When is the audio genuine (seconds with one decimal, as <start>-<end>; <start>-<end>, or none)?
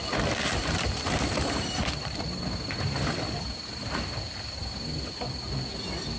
0.0-0.6; 3.9-4.6; 5.2-6.2